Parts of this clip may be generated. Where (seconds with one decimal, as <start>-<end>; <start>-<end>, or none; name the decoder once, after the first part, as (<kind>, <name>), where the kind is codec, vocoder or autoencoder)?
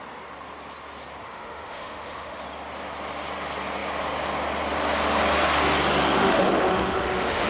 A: 1.2-2.4 (autoencoder, DAC-VAE); 6.2-7.5